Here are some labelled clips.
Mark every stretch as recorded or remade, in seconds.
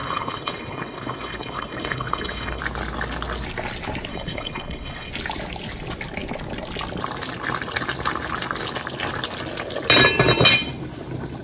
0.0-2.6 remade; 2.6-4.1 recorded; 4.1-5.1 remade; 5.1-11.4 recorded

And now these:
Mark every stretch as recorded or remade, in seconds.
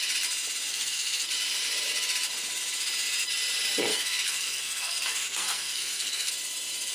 0.0-0.7 recorded; 0.7-1.3 remade; 1.3-3.9 recorded; 3.9-6.3 remade; 6.3-6.9 recorded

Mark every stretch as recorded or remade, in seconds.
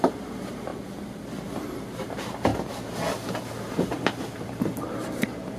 0.0-0.7 remade; 0.7-1.4 recorded; 1.4-2.5 remade; 2.5-3.7 recorded; 3.7-5.6 remade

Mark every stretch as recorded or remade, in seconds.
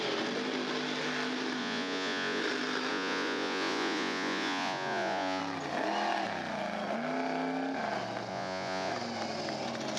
0.0-1.6 recorded; 1.6-2.4 remade; 2.4-2.9 recorded; 2.9-5.4 remade; 5.4-8.3 recorded; 8.3-8.9 remade; 8.9-10.0 recorded